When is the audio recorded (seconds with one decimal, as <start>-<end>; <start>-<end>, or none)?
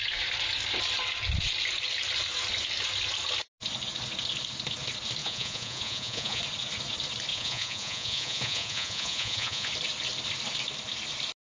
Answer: 0.0-5.2; 6.4-7.3; 9.7-11.5